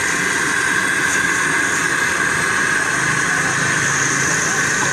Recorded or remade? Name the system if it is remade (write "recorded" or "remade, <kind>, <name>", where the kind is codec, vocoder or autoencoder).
recorded